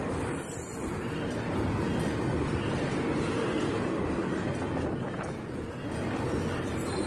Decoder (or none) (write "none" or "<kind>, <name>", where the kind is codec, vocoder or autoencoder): none